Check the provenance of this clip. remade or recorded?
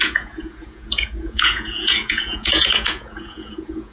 remade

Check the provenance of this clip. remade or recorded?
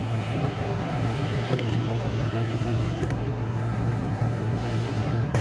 remade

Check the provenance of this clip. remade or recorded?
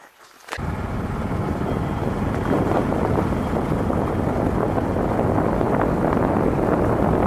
recorded